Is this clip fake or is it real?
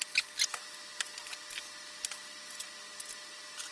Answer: real